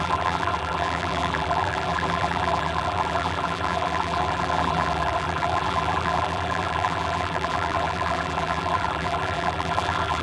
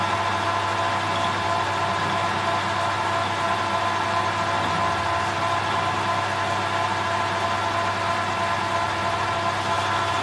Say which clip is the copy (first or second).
first